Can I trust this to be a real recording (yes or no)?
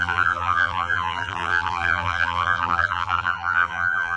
no